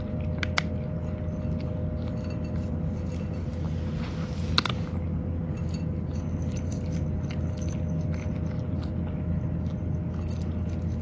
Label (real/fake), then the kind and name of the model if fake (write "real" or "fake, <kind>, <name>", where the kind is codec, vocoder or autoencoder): real